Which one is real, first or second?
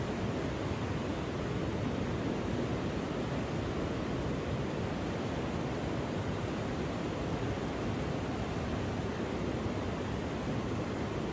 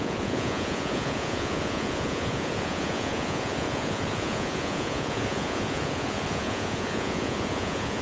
first